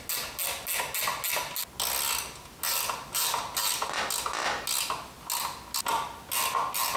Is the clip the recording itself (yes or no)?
yes